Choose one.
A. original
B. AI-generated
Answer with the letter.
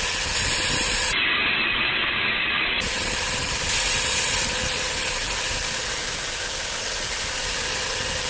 A